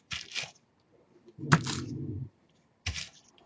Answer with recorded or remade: recorded